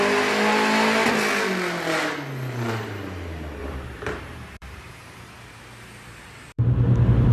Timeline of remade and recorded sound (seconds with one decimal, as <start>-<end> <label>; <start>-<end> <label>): 0.0-3.6 recorded; 3.6-6.6 remade; 6.6-7.3 recorded